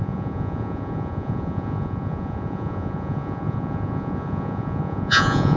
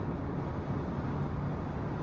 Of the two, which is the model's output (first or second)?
first